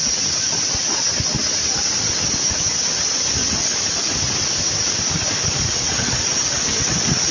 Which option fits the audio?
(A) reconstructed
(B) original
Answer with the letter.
B